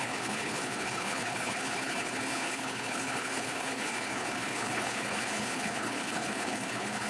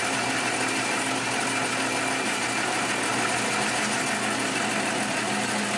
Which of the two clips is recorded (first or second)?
second